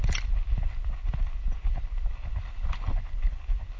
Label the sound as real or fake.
real